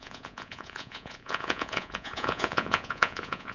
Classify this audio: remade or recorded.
remade